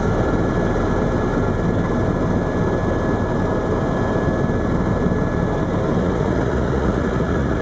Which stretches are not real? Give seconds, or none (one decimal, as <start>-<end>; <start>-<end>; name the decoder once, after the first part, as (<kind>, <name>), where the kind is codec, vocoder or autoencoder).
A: 6.0-7.6 (vocoder, Vocos)

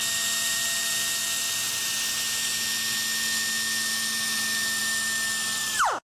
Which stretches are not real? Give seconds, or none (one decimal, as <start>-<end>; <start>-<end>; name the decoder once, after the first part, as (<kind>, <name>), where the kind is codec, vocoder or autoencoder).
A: none

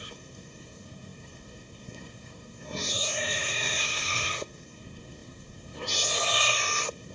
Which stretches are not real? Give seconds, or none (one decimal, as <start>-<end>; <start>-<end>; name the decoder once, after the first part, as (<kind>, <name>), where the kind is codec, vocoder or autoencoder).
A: 0.0-7.1 (codec, SNAC)

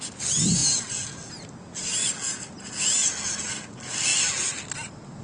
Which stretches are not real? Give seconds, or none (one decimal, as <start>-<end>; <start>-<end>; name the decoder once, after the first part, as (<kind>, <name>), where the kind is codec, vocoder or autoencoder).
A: none